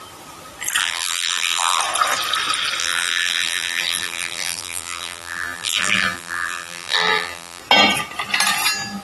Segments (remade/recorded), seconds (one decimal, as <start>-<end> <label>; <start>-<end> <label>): 0.0-0.8 recorded; 0.8-1.8 remade; 1.8-2.8 recorded; 2.8-7.6 remade; 7.6-9.0 recorded